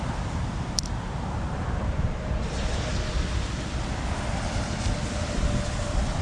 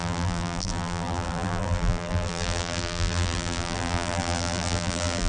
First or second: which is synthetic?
second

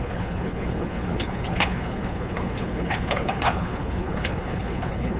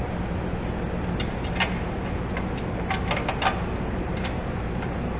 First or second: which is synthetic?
first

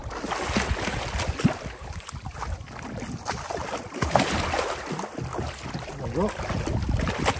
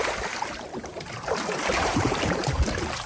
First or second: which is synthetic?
second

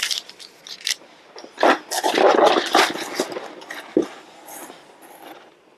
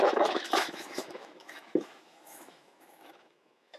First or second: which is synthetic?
second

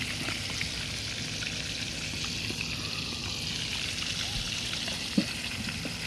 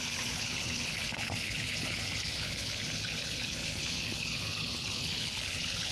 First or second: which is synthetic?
second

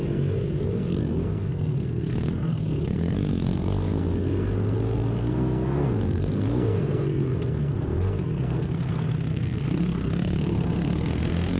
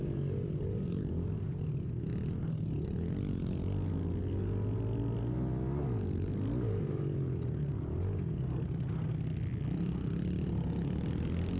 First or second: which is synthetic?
first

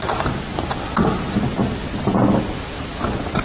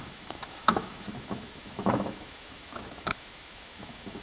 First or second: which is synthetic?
second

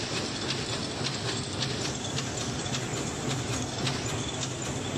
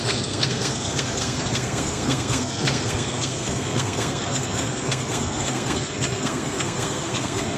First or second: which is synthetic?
second